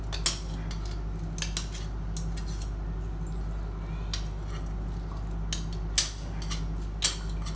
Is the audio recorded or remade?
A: recorded